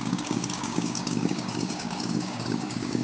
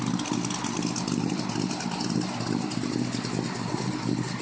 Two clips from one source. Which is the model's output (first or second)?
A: first